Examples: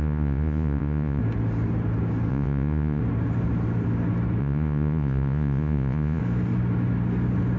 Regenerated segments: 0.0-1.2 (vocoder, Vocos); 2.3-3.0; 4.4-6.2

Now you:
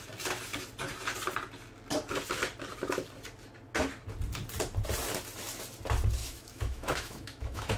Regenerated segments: 6.2-7.8 (autoencoder, DAC-VAE)

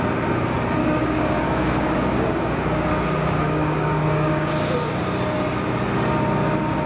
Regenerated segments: 0.8-4.5 (codec, DAC)

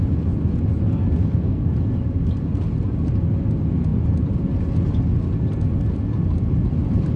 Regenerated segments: 1.2-1.7 (codec, SNAC)

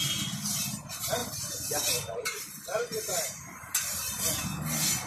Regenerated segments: 1.2-4.3 (vocoder, BigVGAN v2)